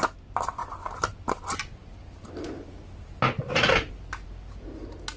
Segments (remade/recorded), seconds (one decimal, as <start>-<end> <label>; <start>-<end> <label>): 0.0-5.2 recorded